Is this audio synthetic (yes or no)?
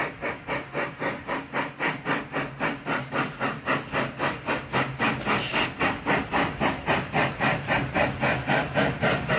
no